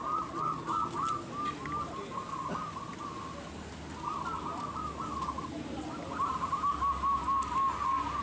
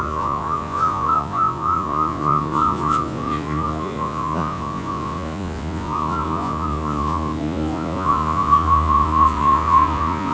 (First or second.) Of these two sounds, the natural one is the first